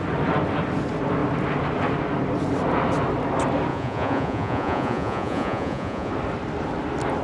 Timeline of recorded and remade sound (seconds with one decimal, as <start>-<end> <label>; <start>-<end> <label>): 0.0-3.7 recorded; 3.7-6.1 remade; 6.1-7.2 recorded